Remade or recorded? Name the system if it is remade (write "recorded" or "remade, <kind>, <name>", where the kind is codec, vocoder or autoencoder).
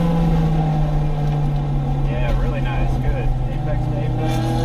recorded